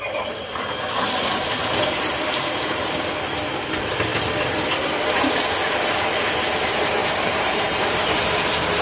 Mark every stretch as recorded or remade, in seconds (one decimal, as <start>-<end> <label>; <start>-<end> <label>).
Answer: 0.0-1.6 recorded; 1.6-3.0 remade; 3.0-7.0 recorded; 7.0-8.3 remade; 8.3-8.8 recorded